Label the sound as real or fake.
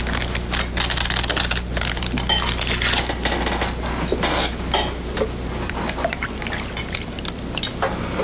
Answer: real